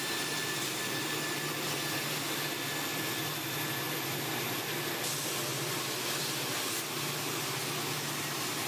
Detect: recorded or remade recorded